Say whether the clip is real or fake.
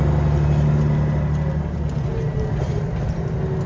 real